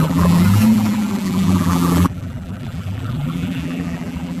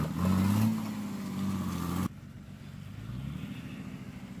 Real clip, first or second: second